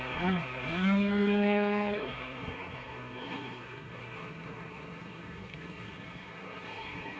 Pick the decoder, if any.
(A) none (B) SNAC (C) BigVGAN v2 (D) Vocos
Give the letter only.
B